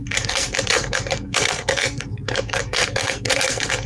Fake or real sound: fake